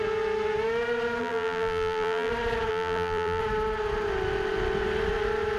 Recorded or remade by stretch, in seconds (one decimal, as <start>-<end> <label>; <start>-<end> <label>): 0.0-1.2 recorded; 1.2-2.3 remade; 2.3-2.7 recorded; 2.7-3.4 remade; 3.4-5.6 recorded